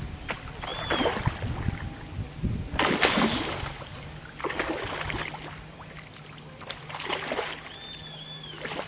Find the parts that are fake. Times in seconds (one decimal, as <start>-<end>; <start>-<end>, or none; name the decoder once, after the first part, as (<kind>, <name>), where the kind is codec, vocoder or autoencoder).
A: none